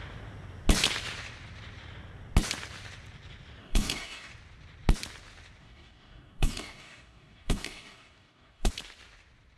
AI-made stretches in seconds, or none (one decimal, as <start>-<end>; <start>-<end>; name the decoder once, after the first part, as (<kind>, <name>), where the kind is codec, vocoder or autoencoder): 3.6-4.3 (codec, DAC); 5.6-8.7